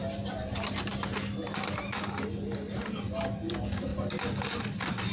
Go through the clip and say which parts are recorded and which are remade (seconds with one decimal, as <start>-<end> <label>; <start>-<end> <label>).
0.0-5.1 recorded